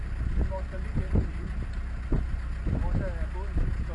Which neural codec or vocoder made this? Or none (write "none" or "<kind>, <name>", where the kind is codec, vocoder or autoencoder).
none